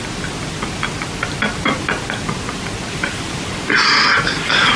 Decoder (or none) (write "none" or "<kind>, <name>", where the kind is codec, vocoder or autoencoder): none